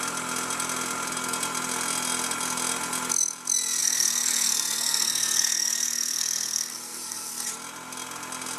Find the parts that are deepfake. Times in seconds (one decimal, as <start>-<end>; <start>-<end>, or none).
3.8-7.3